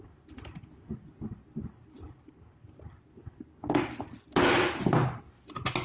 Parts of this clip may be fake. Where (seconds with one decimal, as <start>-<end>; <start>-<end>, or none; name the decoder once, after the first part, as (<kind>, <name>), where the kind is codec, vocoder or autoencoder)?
none